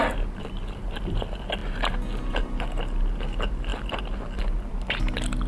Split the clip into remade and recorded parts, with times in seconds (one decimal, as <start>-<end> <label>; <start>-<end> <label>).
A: 0.0-5.5 recorded